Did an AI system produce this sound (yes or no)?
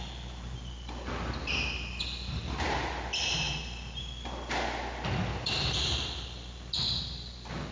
no